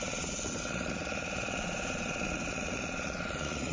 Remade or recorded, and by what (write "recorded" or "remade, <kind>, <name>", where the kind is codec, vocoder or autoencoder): remade, vocoder, Vocos